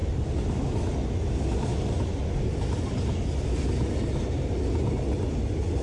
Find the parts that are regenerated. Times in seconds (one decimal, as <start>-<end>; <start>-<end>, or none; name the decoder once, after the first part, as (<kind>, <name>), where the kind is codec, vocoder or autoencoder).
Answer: none